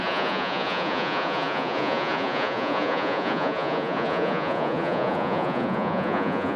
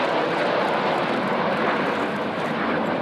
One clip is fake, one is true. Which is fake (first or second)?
first